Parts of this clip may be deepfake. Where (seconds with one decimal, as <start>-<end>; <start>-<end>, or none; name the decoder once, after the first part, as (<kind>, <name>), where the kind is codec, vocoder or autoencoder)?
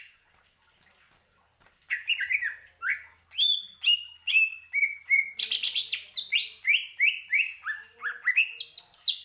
none